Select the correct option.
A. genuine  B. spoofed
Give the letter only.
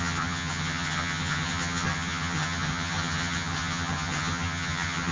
B